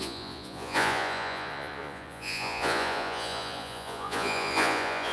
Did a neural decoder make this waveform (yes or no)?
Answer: yes